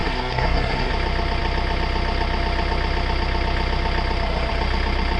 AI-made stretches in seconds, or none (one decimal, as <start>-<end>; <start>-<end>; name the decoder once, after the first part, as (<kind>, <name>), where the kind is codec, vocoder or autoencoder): 0.0-0.9 (codec, SNAC)